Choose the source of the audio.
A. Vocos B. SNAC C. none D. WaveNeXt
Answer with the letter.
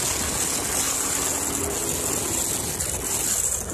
C